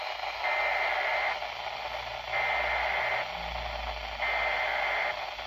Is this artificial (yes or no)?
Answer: no